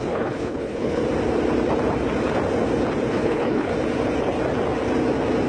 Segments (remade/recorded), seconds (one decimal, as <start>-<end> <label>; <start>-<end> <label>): 0.0-1.0 remade; 1.0-3.1 recorded; 3.1-3.7 remade; 3.7-5.5 recorded